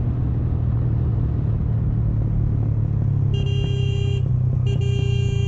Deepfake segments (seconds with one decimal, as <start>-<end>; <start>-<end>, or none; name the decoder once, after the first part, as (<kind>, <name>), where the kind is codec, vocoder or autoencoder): none